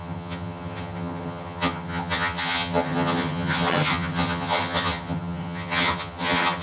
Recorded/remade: remade